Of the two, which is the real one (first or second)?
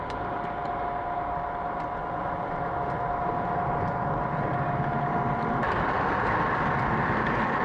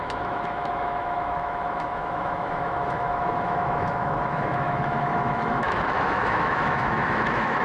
first